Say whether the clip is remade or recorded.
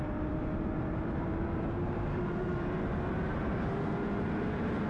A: remade